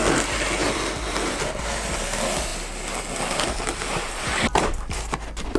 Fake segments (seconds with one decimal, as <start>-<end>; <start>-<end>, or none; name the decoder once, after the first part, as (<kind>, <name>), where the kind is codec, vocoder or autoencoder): 0.6-1.6 (vocoder, BigVGAN v2); 3.7-4.7